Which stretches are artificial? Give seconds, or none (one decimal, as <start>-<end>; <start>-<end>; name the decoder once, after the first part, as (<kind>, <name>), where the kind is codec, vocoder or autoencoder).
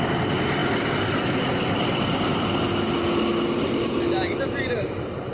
none